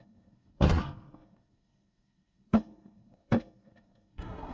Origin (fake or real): fake